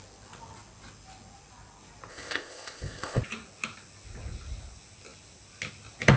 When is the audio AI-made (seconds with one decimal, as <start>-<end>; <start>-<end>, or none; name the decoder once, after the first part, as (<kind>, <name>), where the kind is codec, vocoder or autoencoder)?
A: 2.1-3.2 (codec, ZipCodec)

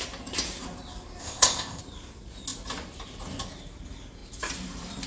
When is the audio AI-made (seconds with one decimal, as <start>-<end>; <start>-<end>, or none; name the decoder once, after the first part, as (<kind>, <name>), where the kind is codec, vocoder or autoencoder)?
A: 1.2-1.8 (codec, ZipCodec)